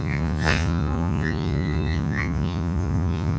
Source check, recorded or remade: remade